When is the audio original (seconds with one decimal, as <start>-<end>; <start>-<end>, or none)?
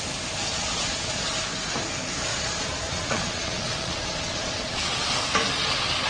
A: 0.0-0.5; 1.3-2.3; 5.1-6.1